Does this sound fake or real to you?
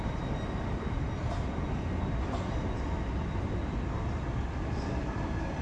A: real